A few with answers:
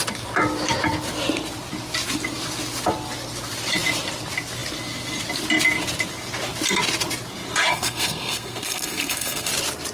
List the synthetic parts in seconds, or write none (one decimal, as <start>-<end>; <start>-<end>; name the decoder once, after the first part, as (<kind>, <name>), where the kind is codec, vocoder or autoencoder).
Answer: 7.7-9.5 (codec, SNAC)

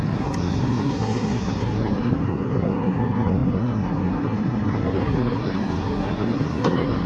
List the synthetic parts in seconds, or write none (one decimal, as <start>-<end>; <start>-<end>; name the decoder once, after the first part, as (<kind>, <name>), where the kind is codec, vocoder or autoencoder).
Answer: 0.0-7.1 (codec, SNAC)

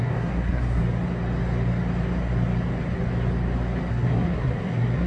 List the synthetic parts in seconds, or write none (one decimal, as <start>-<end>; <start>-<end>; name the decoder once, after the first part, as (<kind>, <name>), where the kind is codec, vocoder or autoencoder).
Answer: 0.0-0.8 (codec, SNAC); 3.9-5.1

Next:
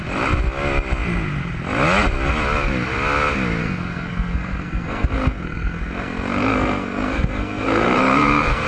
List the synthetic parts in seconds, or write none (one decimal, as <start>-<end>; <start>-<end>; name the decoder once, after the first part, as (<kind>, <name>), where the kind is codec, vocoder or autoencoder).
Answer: 3.6-8.7 (codec, SNAC)

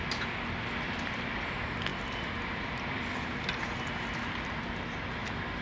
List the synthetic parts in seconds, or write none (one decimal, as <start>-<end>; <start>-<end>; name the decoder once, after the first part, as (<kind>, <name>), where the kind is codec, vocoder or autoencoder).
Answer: none

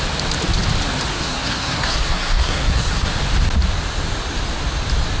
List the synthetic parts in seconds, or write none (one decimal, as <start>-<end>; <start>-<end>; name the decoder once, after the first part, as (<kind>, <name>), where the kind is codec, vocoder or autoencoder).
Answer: 1.1-3.1 (codec, SNAC)

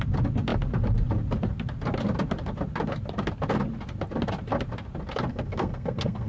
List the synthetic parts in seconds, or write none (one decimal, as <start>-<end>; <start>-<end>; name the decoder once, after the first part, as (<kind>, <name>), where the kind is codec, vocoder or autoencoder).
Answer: 5.3-6.3 (codec, SNAC)